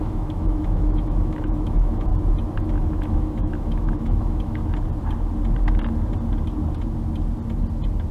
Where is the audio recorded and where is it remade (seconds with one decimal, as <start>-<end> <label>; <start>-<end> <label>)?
0.0-2.1 remade; 2.1-2.6 recorded; 2.6-4.6 remade; 4.6-8.1 recorded

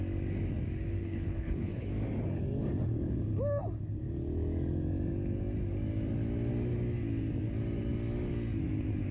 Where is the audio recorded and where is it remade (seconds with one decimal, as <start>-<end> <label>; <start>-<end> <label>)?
0.0-1.0 recorded; 1.0-1.9 remade; 1.9-9.1 recorded